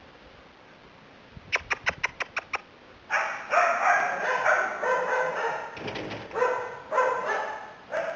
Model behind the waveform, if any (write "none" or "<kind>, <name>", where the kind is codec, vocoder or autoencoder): none